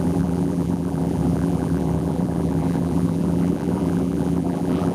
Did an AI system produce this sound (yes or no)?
yes